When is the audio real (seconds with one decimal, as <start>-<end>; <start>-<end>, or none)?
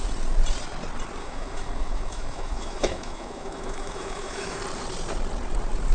0.0-1.2; 4.6-5.9